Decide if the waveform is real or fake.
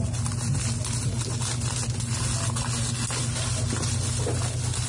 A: real